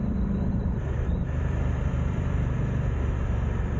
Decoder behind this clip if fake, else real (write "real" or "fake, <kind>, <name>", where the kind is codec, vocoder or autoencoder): fake, vocoder, BigVGAN v2